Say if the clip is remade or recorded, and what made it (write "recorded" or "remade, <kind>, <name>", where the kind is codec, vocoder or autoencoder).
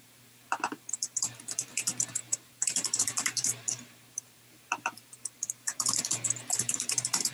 remade, vocoder, BigVGAN v2